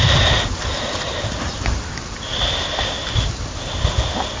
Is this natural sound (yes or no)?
yes